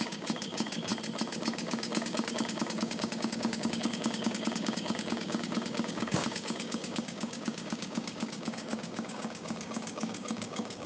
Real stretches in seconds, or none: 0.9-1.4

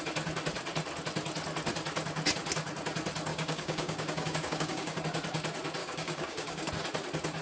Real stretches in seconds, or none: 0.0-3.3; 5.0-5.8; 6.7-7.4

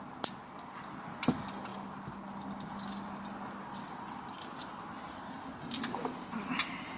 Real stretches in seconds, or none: 0.0-7.0